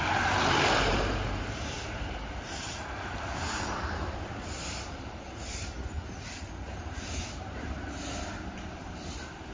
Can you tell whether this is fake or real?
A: fake